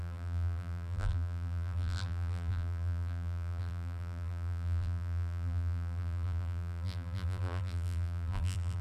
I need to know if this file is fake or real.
fake